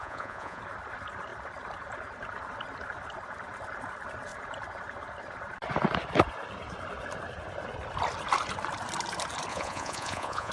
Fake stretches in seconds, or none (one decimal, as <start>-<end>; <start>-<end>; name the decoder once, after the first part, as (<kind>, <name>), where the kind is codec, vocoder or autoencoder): 0.0-0.6 (vocoder, Vocos); 9.5-10.5